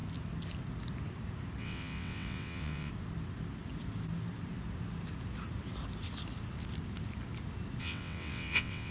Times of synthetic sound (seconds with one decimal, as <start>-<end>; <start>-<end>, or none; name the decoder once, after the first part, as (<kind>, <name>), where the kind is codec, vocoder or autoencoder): 1.6-2.9 (vocoder, WaveNeXt); 7.8-8.9